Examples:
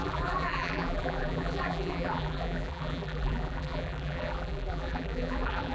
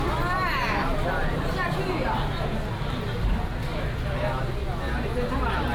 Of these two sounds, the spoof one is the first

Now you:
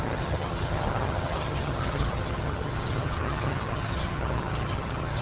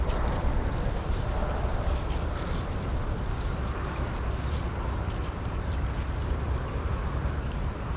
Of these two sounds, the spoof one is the first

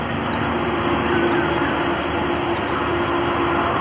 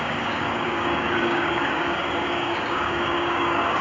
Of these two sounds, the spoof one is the second